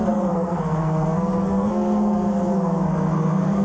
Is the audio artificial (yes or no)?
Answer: yes